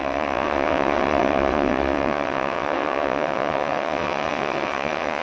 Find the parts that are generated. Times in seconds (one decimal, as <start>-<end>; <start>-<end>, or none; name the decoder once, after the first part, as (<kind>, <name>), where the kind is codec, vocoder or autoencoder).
0.0-5.2 (vocoder, WaveNeXt)